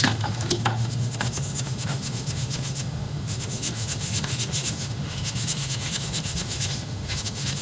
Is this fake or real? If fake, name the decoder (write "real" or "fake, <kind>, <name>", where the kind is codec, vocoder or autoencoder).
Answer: fake, autoencoder, DAC-VAE